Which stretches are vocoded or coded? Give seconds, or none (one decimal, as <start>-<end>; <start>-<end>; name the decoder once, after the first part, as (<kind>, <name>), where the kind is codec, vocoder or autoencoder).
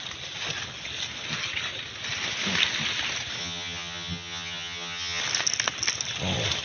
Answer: 3.4-5.2 (vocoder, HiFi-GAN)